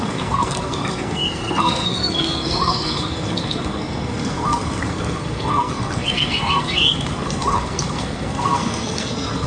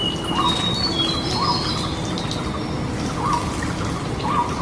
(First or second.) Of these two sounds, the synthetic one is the first